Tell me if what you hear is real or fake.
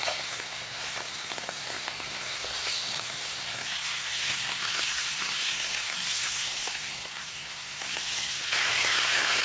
fake